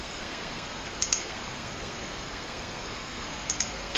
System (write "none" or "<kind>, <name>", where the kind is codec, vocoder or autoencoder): codec, SNAC